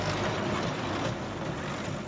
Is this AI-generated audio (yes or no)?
no